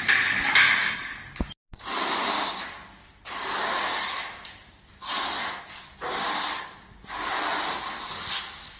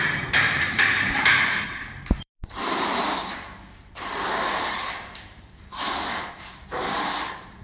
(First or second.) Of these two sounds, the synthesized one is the second